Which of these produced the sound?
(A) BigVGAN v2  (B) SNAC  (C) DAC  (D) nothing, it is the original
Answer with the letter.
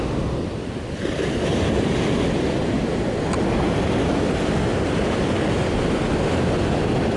D